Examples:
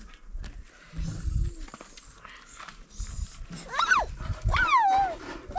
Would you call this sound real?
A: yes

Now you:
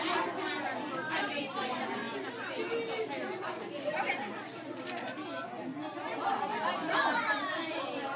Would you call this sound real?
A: yes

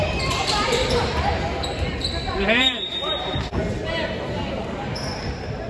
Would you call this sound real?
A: no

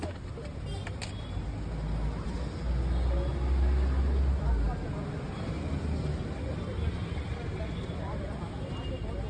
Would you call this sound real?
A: yes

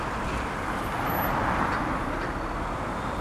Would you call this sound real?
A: yes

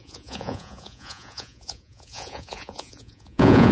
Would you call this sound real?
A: no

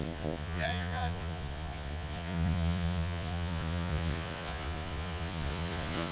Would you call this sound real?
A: no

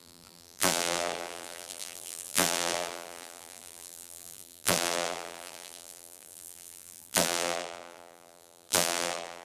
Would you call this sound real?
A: no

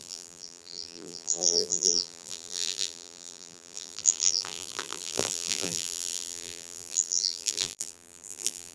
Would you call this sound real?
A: no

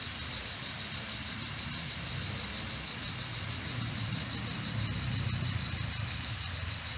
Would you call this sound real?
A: no